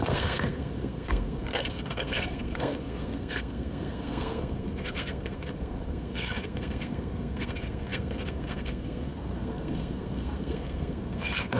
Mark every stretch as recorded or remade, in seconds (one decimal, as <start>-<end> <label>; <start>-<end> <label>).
0.0-11.6 remade